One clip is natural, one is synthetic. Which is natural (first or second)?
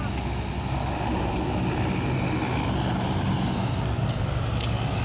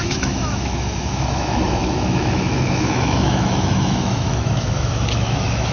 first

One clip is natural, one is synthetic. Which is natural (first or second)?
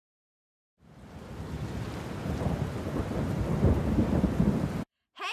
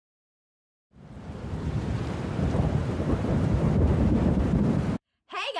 first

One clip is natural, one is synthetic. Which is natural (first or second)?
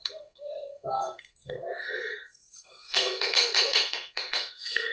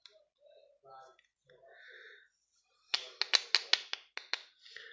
second